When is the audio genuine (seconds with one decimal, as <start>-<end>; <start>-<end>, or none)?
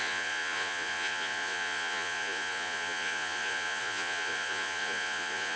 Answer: none